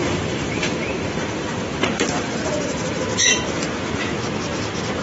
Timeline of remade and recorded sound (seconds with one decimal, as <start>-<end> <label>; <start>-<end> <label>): 0.0-3.0 remade; 3.0-5.0 recorded